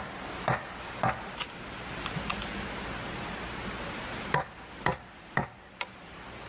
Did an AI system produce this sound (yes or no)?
no